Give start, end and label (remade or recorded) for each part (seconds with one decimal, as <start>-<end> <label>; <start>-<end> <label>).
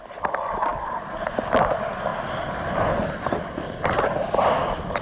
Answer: 0.0-5.0 recorded